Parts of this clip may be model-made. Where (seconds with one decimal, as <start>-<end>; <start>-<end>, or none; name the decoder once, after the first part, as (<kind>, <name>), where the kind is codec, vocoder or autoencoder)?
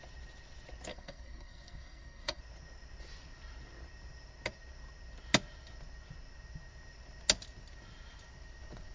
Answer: 0.9-2.4 (codec, SNAC)